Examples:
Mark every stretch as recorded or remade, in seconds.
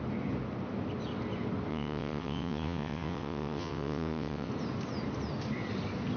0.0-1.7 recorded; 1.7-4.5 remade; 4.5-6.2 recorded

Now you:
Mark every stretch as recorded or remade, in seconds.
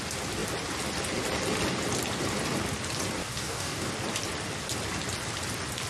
0.0-3.2 recorded; 3.2-3.9 remade; 3.9-5.9 recorded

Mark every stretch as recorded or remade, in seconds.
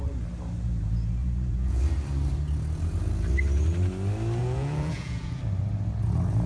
0.0-1.2 recorded; 1.2-1.8 remade; 1.8-4.4 recorded; 4.4-5.4 remade; 5.4-6.5 recorded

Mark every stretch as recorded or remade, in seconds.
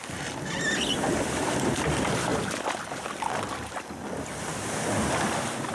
0.0-5.7 recorded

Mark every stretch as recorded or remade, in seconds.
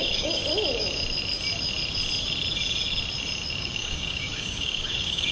0.0-0.4 remade; 0.4-3.6 recorded; 3.6-5.3 remade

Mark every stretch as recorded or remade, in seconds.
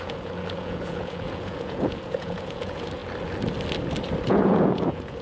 0.0-3.0 remade; 3.0-4.3 recorded; 4.3-5.2 remade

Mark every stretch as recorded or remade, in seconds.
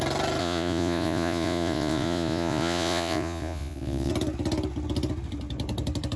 0.0-0.4 recorded; 0.4-4.1 remade; 4.1-6.2 recorded